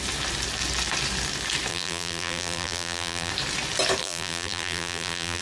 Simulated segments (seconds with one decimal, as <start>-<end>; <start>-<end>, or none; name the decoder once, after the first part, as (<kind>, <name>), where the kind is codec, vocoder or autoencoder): 1.7-3.3 (vocoder, BigVGAN v2); 4.0-5.4